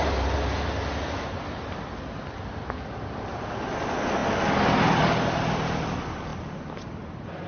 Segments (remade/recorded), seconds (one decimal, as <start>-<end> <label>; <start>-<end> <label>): 0.0-7.5 recorded